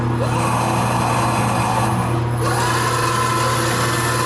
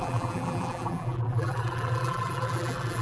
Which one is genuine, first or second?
first